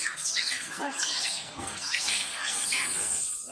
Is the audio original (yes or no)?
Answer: no